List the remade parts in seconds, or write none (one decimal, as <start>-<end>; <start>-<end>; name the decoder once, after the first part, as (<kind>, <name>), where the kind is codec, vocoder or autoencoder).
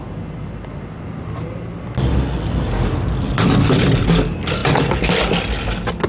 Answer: none